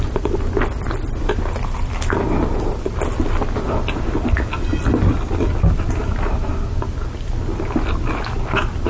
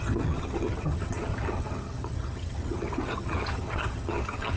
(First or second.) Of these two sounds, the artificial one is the second